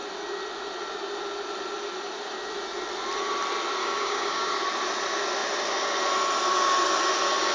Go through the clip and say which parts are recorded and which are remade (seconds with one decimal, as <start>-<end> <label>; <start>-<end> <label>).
0.0-3.8 recorded; 3.8-4.5 remade; 4.5-7.5 recorded